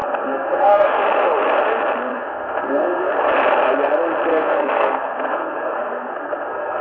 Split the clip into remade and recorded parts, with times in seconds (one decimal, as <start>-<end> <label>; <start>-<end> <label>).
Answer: 0.0-1.0 remade; 1.0-2.1 recorded; 2.1-3.1 remade; 3.1-4.3 recorded; 4.3-6.8 remade